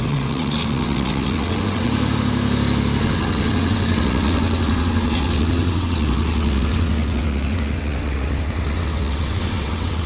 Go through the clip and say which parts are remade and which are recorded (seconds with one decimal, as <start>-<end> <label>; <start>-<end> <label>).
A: 0.0-1.9 remade; 1.9-3.0 recorded; 3.0-10.1 remade